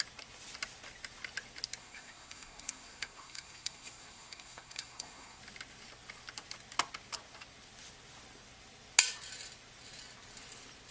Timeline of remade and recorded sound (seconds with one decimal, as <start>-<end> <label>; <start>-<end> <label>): 0.0-1.8 recorded; 1.8-5.4 remade; 5.4-10.9 recorded